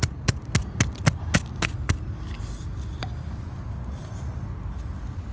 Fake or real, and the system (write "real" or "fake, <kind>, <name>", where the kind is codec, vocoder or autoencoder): real